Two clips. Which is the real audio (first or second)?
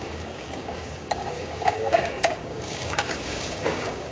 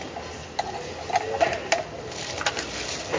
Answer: second